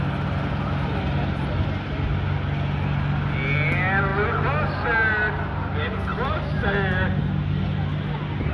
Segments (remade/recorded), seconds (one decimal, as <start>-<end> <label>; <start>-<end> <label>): 0.0-8.5 recorded